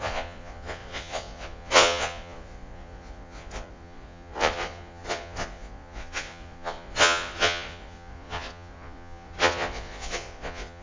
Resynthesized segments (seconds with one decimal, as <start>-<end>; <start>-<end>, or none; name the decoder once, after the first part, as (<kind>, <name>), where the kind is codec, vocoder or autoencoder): 0.0-10.8 (vocoder, Vocos)